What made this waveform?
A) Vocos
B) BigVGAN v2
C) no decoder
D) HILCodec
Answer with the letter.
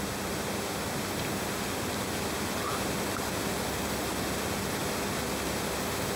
C